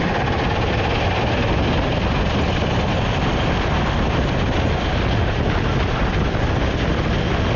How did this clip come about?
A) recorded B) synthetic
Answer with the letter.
A